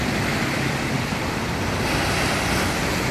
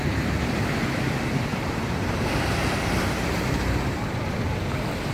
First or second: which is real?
first